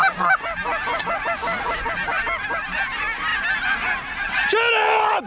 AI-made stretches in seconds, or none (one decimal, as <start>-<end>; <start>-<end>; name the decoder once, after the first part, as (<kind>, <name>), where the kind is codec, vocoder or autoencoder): none